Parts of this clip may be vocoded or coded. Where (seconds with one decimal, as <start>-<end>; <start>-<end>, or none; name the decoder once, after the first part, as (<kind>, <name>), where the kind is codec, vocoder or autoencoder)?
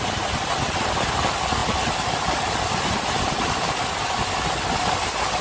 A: none